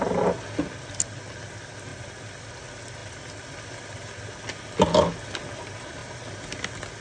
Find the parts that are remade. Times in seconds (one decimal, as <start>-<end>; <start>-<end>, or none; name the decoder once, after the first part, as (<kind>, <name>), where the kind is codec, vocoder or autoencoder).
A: 1.9-2.5 (vocoder, BigVGAN v2); 3.0-4.2; 6.0-6.5